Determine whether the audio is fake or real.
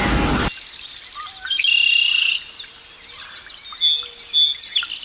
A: real